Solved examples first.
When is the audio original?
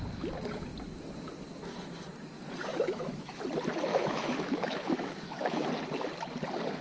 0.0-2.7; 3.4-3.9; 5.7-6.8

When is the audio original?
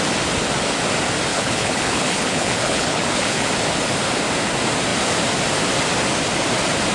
0.0-1.3; 3.5-6.9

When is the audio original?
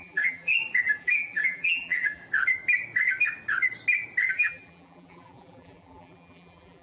0.5-1.0; 2.2-4.3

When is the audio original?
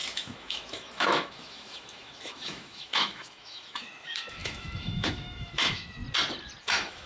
6.0-6.6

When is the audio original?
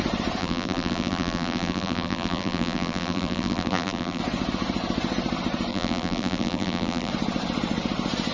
0.0-0.4; 4.2-5.7; 7.1-8.3